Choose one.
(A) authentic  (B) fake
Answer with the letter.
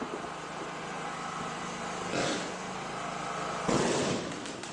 A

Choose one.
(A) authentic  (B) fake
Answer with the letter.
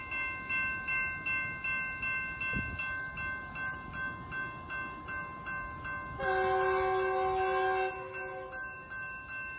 A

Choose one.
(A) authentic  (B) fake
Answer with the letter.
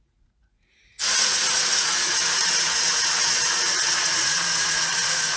B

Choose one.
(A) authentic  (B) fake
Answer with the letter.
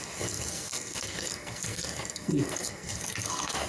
B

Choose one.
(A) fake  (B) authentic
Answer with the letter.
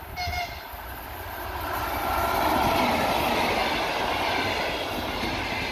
B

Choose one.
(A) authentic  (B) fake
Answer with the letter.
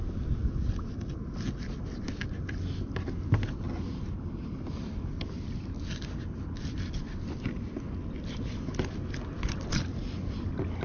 A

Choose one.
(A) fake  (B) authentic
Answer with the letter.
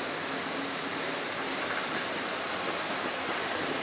B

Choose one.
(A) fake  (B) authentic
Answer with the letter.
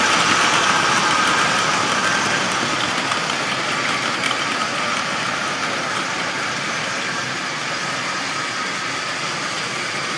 A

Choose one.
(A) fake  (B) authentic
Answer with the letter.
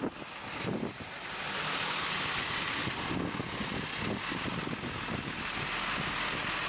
B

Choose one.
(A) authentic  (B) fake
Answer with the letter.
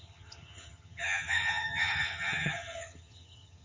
B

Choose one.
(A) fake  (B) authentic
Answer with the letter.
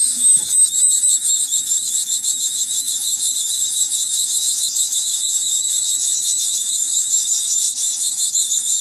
A